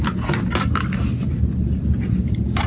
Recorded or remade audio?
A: recorded